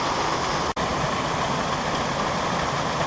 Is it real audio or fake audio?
real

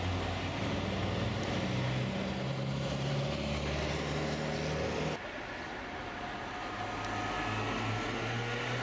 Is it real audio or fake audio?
real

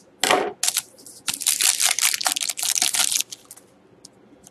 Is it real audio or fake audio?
real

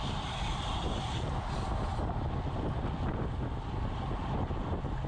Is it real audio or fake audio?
real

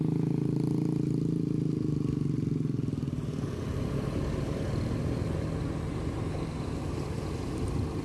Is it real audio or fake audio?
real